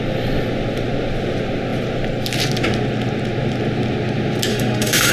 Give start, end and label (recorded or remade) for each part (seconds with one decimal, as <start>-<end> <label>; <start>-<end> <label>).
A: 0.0-4.5 recorded; 4.5-5.1 remade